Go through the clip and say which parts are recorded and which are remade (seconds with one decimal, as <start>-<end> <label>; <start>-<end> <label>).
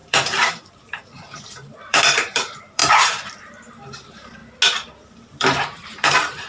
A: 0.0-4.4 remade; 4.4-5.1 recorded; 5.1-6.5 remade